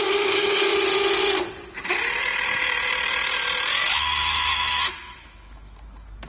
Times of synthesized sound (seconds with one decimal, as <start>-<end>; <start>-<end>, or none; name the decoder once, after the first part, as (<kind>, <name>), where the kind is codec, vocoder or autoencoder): 0.0-0.7 (autoencoder, DAC-VAE); 4.0-6.3